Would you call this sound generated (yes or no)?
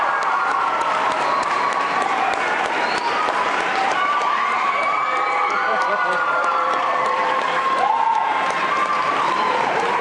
yes